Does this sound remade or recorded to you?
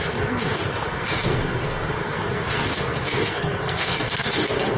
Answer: remade